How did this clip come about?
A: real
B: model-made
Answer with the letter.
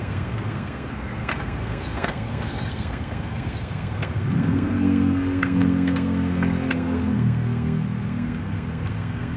B